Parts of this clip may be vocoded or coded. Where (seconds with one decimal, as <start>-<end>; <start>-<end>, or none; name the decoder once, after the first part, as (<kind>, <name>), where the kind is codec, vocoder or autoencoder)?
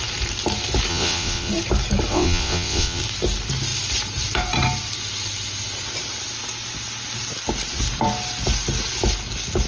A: 0.9-1.5 (vocoder, WaveNeXt); 2.1-3.0